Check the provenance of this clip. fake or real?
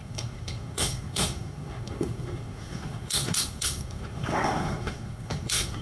fake